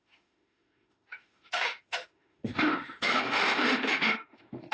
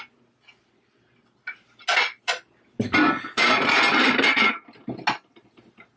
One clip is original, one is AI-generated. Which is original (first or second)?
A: second